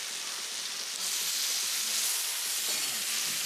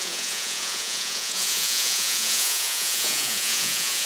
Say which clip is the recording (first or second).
first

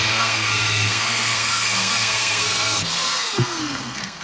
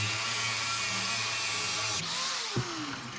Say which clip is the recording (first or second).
second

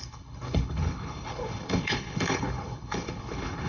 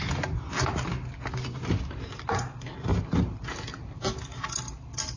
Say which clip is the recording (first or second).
second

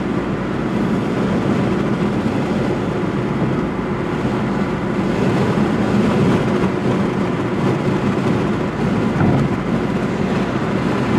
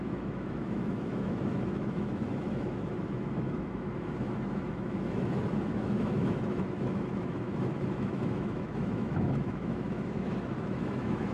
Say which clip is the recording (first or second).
first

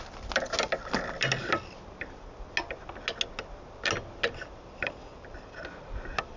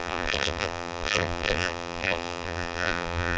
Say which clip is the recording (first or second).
first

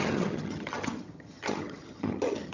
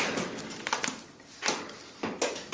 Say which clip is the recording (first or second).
second